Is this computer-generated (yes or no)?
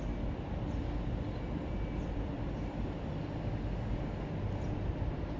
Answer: no